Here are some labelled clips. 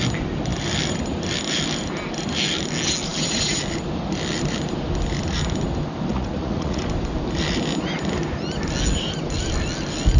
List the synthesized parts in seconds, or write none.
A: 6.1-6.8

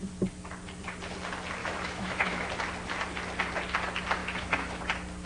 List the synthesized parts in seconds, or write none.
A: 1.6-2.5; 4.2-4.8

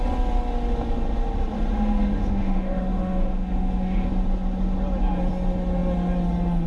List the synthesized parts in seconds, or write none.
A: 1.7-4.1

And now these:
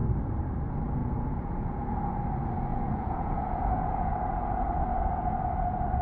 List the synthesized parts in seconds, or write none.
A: 1.0-1.9; 2.7-4.1

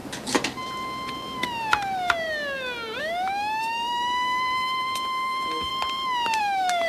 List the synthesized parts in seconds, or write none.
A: 3.0-5.7; 6.4-6.9

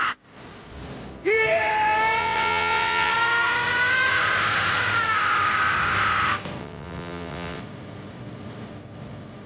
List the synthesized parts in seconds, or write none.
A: 2.2-3.1; 6.6-7.6

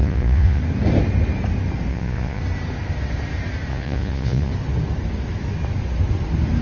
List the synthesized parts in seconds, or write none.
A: 0.0-0.6; 1.9-2.4; 3.7-4.5

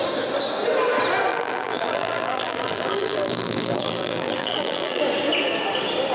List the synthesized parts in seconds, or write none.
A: 1.3-5.0